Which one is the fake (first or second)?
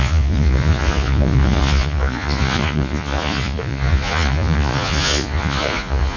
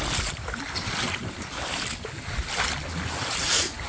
first